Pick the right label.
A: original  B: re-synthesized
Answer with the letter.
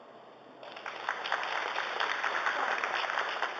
A